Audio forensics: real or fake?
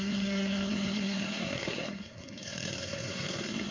fake